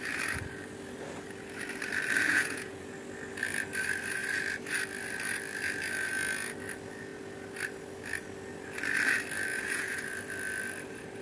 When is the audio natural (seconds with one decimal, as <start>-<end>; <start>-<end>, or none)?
0.0-2.3; 2.9-9.5; 10.1-11.2